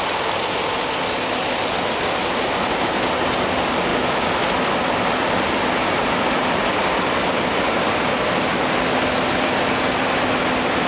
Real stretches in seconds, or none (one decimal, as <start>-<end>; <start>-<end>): 0.0-10.9